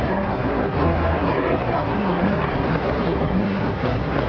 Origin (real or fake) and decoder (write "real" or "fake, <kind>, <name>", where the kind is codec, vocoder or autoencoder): fake, codec, SNAC